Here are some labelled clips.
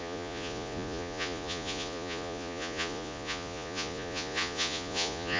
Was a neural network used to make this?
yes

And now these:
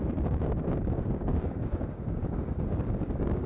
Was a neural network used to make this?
yes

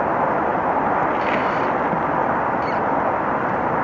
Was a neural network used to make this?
yes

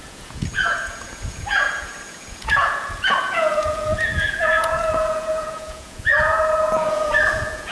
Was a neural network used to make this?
yes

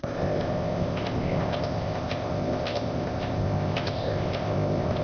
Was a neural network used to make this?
yes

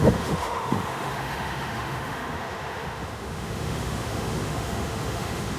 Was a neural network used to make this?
yes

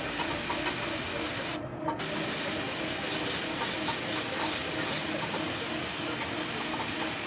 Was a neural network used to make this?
no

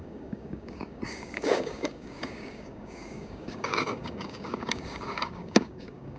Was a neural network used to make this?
yes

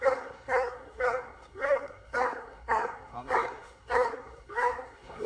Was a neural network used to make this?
yes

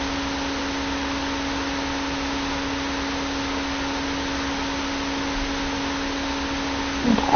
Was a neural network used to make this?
no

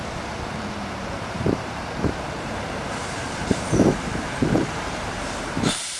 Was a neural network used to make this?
yes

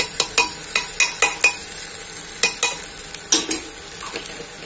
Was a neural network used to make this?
no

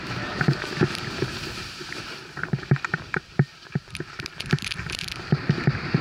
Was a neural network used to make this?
yes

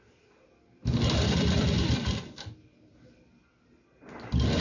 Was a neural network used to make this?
no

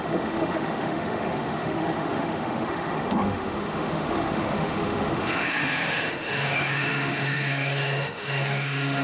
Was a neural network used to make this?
yes